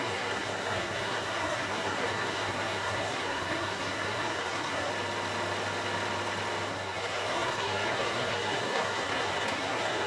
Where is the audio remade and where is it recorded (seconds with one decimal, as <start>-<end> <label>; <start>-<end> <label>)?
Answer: 0.0-4.9 remade; 4.9-6.7 recorded; 6.7-10.1 remade